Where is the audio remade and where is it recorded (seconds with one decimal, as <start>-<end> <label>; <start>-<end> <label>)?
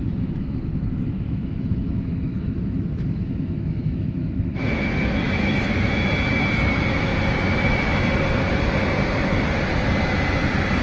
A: 0.0-7.1 remade; 7.1-10.8 recorded